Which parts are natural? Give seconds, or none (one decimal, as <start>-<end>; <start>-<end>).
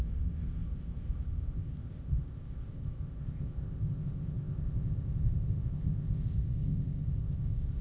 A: none